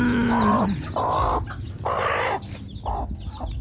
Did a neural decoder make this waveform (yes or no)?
no